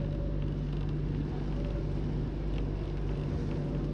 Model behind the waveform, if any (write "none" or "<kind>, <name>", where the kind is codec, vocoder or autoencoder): none